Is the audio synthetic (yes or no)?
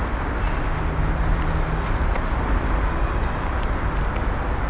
no